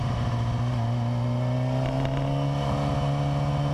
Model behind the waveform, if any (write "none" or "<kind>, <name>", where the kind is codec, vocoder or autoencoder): none